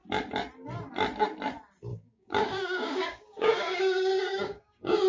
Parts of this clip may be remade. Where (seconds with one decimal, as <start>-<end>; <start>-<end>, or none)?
1.9-5.1